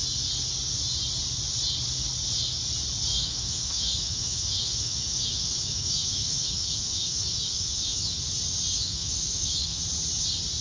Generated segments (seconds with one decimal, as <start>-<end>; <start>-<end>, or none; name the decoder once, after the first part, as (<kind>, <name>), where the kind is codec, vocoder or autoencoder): 3.1-8.2 (autoencoder, DAC-VAE); 8.7-9.8